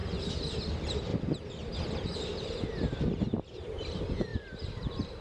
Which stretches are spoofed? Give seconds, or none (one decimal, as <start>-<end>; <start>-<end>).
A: 0.7-5.2